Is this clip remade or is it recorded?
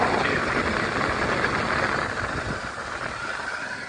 recorded